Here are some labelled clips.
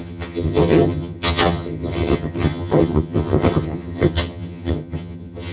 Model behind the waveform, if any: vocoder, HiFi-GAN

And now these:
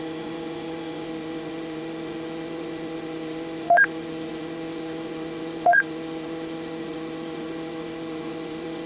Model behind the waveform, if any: vocoder, Vocos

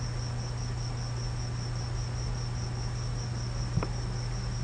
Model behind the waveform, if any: none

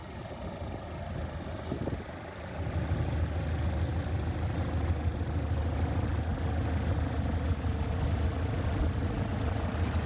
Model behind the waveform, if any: none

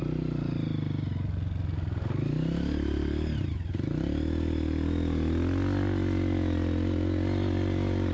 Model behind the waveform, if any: none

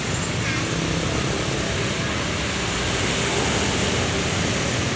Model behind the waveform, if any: none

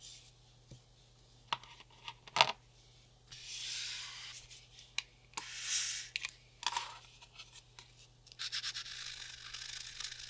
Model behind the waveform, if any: none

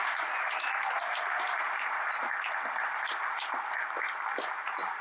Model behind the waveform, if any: none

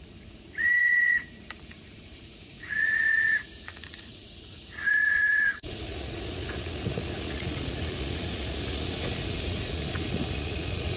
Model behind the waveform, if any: vocoder, Vocos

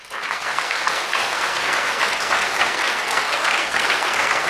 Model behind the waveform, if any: codec, SNAC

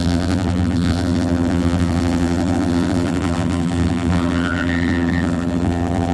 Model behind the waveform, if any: vocoder, BigVGAN v2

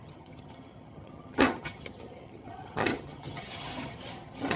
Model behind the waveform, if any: vocoder, HiFi-GAN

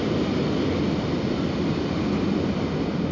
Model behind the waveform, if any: none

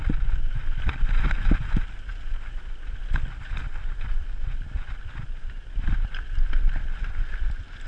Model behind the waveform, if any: none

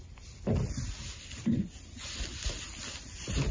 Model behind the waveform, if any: none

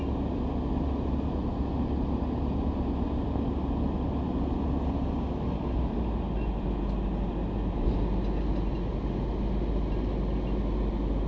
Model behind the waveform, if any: none